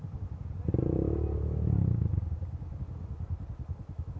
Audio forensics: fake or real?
real